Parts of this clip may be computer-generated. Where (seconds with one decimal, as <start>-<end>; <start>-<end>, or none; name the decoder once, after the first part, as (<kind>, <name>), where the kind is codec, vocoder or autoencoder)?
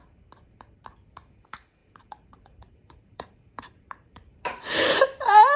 1.8-5.6 (vocoder, BigVGAN v2)